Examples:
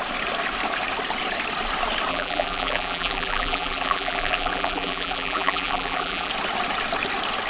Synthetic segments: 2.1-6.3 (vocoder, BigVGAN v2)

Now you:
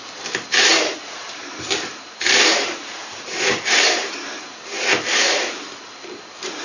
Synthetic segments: 0.7-4.7 (vocoder, BigVGAN v2)